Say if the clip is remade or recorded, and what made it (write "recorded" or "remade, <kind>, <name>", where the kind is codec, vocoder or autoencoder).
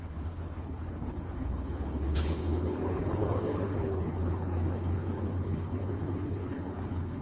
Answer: remade, codec, HILCodec